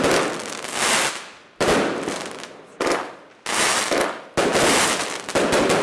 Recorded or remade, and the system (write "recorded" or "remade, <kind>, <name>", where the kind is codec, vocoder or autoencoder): recorded